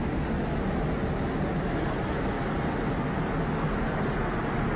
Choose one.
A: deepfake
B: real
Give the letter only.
B